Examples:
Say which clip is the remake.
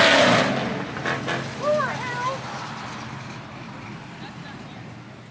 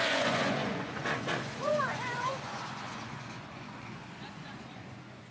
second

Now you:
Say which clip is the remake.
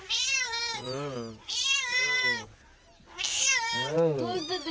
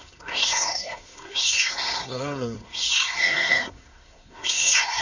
second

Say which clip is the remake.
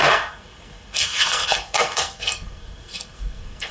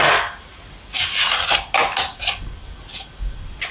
first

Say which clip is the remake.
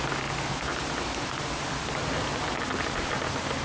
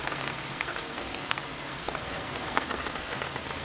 second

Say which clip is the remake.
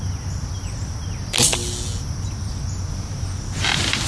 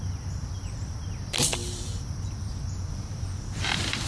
second